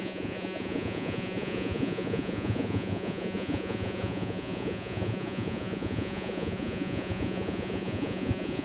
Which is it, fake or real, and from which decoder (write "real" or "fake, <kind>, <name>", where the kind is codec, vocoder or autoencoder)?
fake, vocoder, Vocos